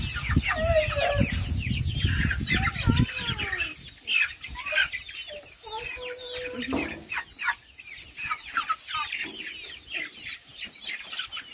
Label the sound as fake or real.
real